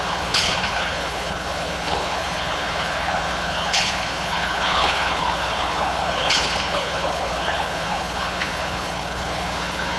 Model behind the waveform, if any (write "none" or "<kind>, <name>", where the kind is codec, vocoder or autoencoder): codec, HILCodec